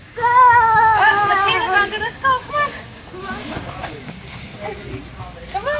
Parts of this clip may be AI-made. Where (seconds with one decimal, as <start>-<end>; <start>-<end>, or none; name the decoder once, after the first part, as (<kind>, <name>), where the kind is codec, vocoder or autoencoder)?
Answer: 0.0-4.5 (codec, DAC)